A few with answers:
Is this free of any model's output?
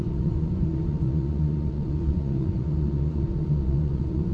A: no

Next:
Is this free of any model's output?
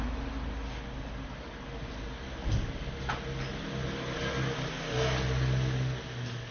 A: yes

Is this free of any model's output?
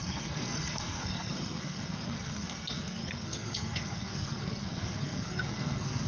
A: no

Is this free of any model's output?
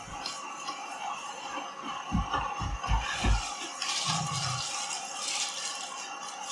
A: yes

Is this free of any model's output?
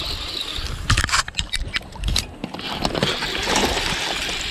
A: yes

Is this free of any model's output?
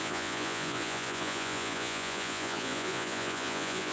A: no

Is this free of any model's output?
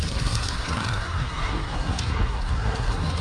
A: no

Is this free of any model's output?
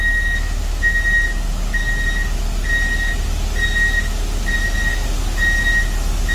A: yes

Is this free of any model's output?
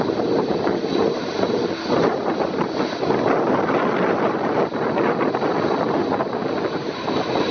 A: yes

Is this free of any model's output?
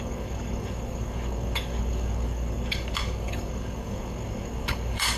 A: no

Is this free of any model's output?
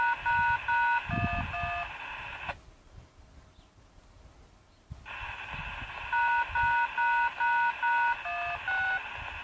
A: yes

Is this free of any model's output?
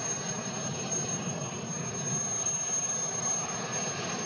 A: yes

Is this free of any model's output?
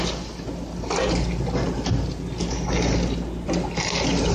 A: no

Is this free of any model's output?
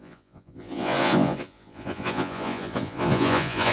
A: no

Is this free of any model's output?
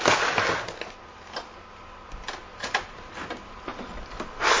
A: yes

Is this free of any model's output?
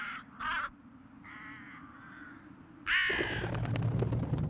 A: yes